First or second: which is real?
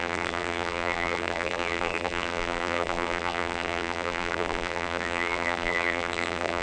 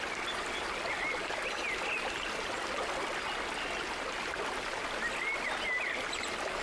second